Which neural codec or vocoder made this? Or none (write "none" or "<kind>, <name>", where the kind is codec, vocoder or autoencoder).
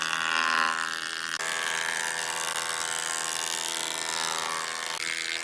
none